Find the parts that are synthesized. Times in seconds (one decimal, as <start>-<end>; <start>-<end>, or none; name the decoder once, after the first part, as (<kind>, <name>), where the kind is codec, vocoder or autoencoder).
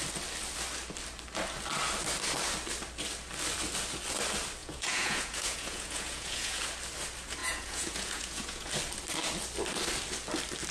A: 4.6-6.6 (vocoder, Vocos); 7.4-8.7